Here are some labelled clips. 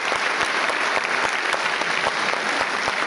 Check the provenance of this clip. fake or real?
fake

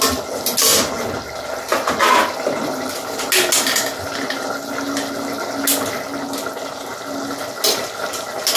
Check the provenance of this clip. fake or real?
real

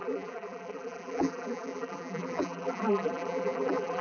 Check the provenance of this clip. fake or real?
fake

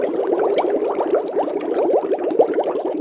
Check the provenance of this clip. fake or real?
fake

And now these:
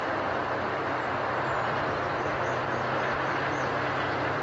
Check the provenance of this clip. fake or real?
fake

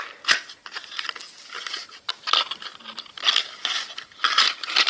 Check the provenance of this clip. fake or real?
real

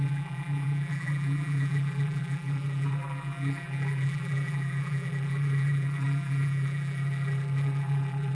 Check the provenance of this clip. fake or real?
fake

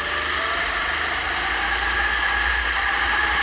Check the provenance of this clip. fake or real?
real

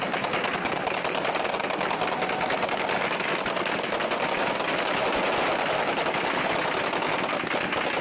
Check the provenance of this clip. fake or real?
real